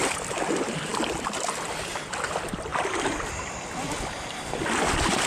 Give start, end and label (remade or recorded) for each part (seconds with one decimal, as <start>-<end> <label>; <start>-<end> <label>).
0.0-5.3 recorded